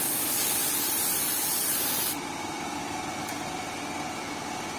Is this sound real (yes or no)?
yes